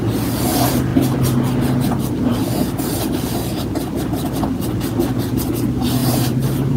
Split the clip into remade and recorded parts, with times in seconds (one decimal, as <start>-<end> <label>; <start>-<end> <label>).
0.0-6.0 recorded; 6.0-6.8 remade